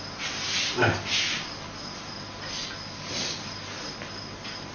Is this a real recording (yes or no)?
yes